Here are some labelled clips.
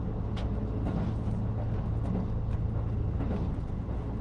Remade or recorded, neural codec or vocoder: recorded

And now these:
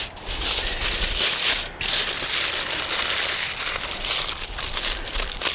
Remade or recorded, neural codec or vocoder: recorded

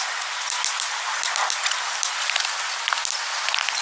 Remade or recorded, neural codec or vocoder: recorded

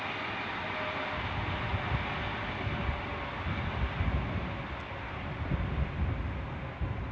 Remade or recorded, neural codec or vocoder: recorded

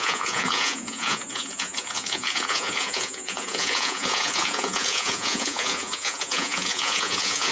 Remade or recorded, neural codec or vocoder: remade, vocoder, Vocos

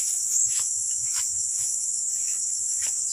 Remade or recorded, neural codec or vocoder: remade, autoencoder, DAC-VAE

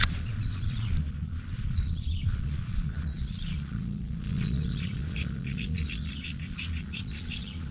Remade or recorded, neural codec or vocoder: remade, vocoder, Vocos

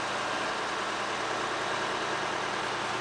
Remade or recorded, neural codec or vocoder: recorded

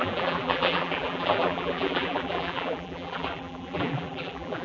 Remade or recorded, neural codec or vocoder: remade, vocoder, BigVGAN v2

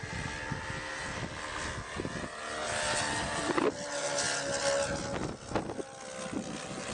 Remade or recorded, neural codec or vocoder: recorded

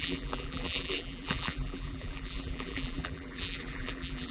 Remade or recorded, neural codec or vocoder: remade, vocoder, BigVGAN v2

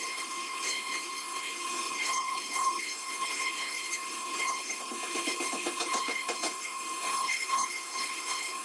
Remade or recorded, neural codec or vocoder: remade, codec, HILCodec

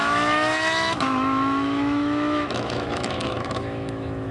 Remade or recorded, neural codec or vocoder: remade, autoencoder, DAC-VAE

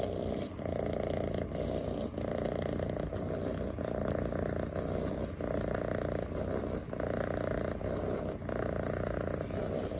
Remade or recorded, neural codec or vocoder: recorded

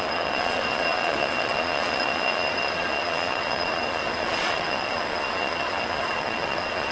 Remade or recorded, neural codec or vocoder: remade, vocoder, Vocos